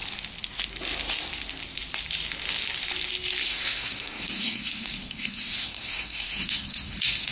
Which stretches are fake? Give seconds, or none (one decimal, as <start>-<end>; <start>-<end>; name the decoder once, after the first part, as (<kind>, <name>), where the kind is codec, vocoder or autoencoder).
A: 3.4-7.3 (codec, SNAC)